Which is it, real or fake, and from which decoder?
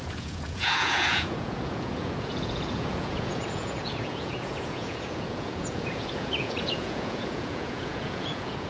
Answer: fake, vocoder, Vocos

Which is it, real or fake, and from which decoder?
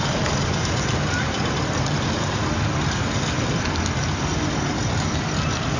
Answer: real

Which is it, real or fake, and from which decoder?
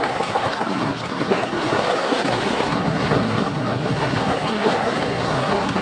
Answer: fake, codec, SNAC